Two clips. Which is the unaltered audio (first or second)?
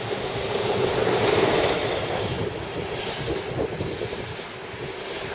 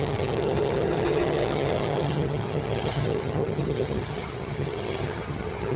first